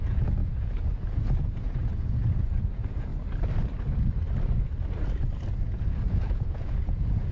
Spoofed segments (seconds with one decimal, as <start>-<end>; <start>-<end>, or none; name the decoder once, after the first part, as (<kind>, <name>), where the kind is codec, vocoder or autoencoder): 0.0-3.1 (vocoder, Vocos); 5.6-7.3